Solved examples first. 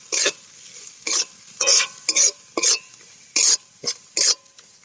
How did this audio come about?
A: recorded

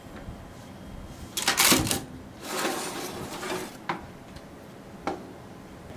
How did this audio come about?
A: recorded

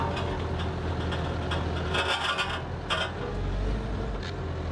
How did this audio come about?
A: recorded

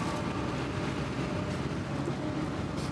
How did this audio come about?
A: recorded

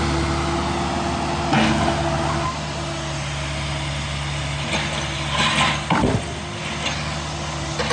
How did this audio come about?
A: recorded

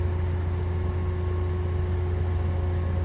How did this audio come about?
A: recorded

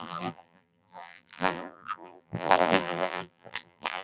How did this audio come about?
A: remade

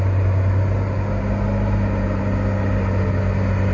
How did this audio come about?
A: recorded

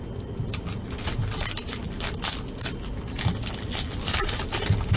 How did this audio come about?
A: recorded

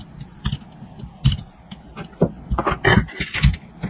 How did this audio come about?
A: recorded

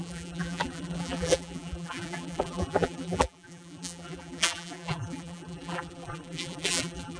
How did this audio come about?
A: remade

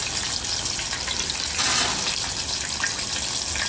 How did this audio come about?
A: recorded